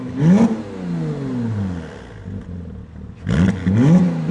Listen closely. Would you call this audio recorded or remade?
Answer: recorded